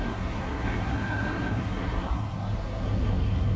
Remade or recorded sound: remade